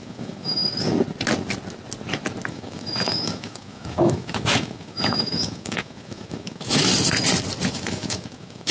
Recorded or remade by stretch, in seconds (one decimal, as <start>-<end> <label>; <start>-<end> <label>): 0.0-0.6 remade; 0.6-2.5 recorded; 2.5-6.9 remade; 6.9-7.7 recorded; 7.7-8.7 remade